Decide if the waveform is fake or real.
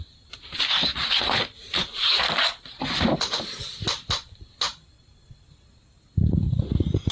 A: real